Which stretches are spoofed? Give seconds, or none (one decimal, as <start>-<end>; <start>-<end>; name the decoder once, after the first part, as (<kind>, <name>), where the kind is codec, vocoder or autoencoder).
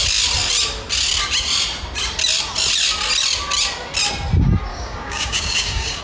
4.7-6.0 (codec, DAC)